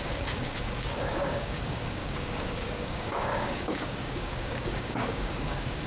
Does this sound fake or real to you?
fake